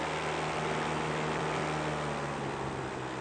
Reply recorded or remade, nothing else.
recorded